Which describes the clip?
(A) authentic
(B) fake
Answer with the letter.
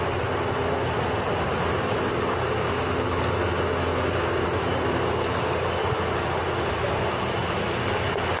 A